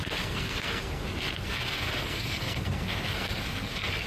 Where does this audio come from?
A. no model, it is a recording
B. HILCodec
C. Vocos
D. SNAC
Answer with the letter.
D